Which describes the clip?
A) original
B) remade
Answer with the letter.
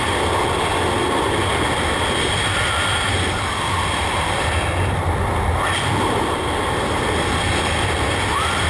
A